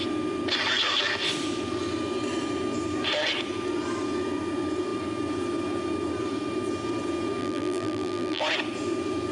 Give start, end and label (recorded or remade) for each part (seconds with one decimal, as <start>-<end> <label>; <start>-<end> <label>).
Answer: 0.0-7.4 recorded; 7.4-8.4 remade; 8.4-9.3 recorded